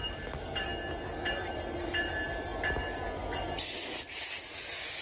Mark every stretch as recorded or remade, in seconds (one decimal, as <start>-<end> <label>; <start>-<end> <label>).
0.0-5.0 recorded